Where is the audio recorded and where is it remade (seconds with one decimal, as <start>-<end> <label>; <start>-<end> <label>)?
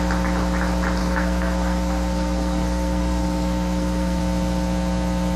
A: 0.0-1.0 recorded; 1.0-4.2 remade; 4.2-5.4 recorded